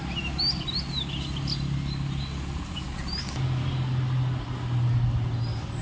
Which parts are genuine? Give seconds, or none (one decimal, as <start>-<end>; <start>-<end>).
0.0-5.8